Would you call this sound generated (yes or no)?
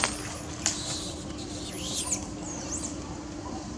no